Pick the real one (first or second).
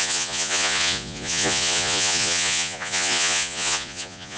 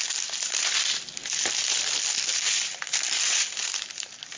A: second